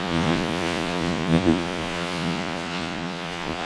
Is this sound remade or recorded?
remade